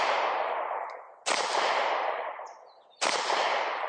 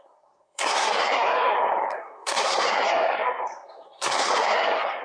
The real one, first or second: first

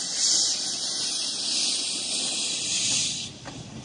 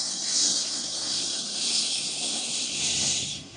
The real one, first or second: first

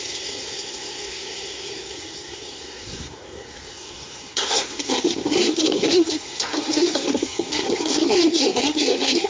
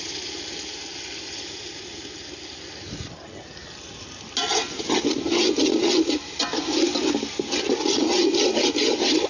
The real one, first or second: second